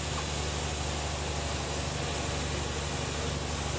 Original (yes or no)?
yes